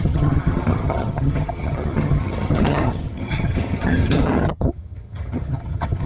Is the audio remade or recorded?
remade